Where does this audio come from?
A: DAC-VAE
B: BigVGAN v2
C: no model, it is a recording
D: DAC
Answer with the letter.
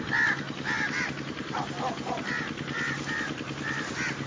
C